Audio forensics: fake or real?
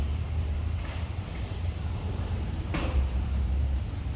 fake